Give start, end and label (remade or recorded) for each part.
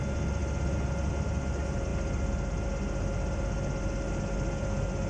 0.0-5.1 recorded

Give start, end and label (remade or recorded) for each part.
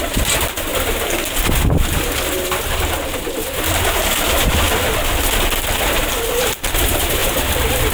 0.0-7.2 recorded; 7.2-7.9 remade